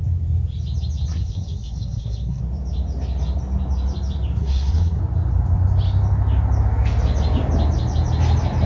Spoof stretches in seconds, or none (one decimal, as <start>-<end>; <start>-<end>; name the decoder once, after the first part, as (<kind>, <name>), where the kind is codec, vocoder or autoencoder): 1.1-2.4 (codec, SNAC); 4.4-5.0